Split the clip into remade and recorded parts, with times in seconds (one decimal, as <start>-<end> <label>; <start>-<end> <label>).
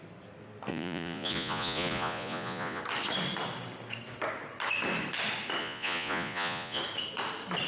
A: 0.0-0.7 recorded; 0.7-2.8 remade; 2.8-5.6 recorded; 5.6-6.8 remade; 6.8-7.7 recorded